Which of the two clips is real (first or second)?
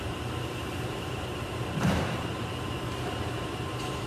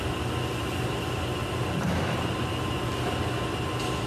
second